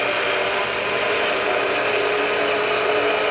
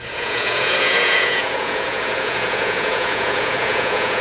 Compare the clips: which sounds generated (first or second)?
second